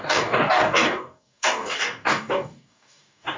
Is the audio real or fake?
fake